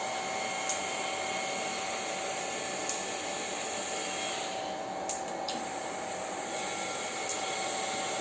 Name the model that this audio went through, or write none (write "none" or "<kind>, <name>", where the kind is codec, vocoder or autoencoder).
none